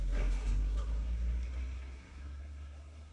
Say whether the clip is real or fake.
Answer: fake